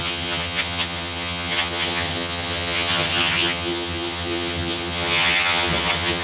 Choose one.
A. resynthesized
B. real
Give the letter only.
A